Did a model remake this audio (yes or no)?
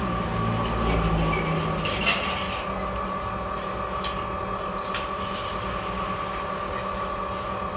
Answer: no